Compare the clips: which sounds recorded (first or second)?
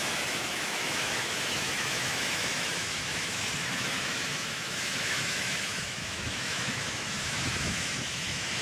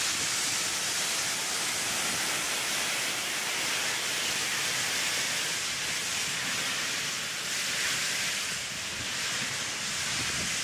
second